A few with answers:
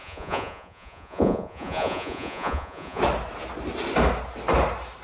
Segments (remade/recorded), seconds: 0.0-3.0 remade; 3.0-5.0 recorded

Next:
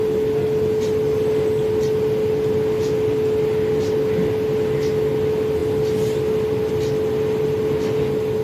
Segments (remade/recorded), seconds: 0.0-8.4 recorded

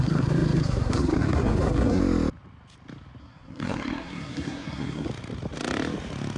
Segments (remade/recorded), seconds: 0.0-2.0 remade; 2.0-3.2 recorded; 3.2-5.1 remade; 5.1-6.4 recorded

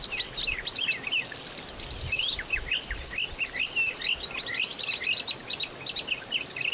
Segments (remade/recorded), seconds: 0.0-6.7 recorded

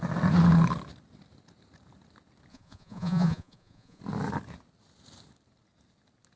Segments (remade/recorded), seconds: 0.0-2.5 recorded; 2.5-4.0 remade; 4.0-6.4 recorded